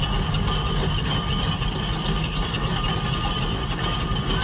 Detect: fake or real real